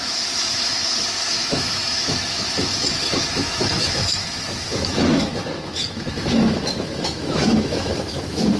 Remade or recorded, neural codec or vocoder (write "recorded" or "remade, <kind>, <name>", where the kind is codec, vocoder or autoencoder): remade, autoencoder, DAC-VAE